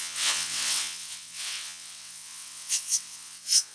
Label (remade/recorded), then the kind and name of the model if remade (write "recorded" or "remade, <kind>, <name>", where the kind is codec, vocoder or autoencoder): remade, vocoder, WaveNeXt